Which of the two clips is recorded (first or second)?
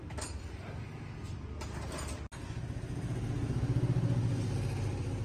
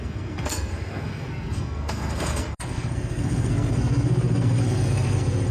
first